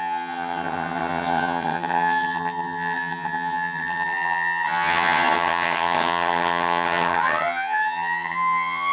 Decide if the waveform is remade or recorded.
remade